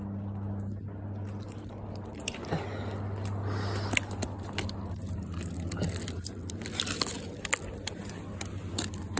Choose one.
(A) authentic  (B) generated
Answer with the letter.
A